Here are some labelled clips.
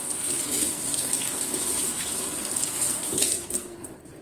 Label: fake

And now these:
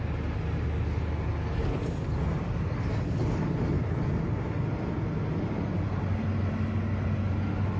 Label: real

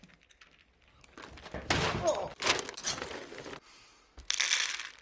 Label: real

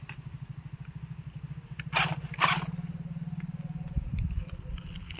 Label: real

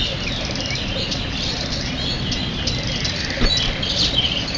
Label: real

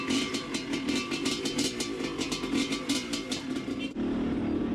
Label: real